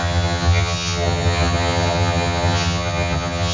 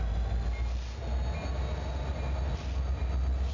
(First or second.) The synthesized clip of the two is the first